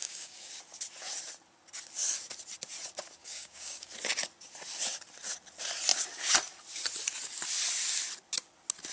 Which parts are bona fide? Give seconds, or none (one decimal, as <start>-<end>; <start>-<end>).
0.6-3.2; 3.9-8.9